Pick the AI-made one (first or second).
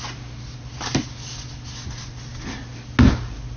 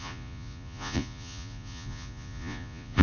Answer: second